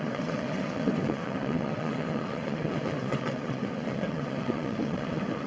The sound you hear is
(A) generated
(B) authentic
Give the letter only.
A